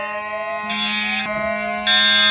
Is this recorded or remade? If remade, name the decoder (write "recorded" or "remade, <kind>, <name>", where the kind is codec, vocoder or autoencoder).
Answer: recorded